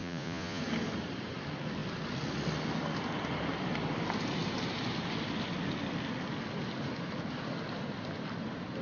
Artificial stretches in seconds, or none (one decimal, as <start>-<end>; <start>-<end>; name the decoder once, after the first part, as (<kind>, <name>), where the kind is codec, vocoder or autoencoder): 0.0-0.6 (vocoder, Vocos)